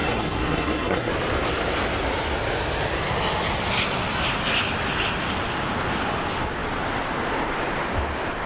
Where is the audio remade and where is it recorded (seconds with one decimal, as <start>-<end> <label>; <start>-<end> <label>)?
0.0-1.1 remade; 1.1-8.5 recorded